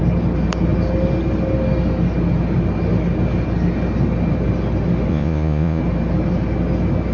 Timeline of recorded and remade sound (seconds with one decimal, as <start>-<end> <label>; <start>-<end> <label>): 0.0-5.1 recorded; 5.1-5.8 remade; 5.8-7.1 recorded